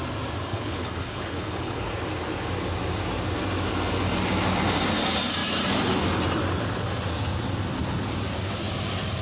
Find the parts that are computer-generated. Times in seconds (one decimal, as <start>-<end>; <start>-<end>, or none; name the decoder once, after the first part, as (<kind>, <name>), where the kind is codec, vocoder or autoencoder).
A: 0.5-1.9 (codec, HILCodec)